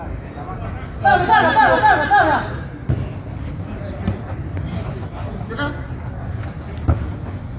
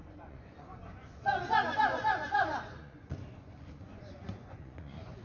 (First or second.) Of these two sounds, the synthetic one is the second